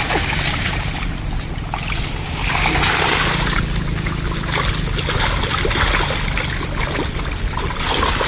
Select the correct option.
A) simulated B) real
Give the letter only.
B